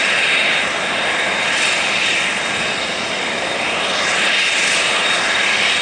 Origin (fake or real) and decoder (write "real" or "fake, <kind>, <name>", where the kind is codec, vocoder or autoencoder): real